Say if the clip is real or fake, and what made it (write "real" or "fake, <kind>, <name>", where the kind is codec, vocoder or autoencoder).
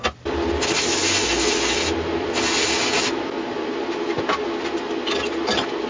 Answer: real